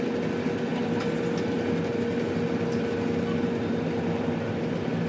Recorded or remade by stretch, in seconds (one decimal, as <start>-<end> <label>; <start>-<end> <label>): 0.0-5.1 recorded